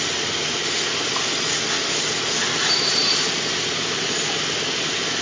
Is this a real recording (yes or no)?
yes